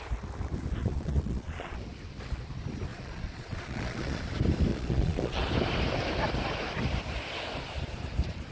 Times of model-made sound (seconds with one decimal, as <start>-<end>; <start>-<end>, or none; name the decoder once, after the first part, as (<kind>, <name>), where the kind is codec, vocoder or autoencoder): 0.8-1.8 (vocoder, Vocos); 2.9-4.2; 4.7-5.4